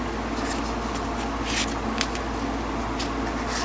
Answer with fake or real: real